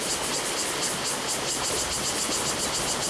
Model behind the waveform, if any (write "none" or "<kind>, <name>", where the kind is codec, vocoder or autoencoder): none